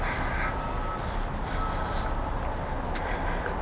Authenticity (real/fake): real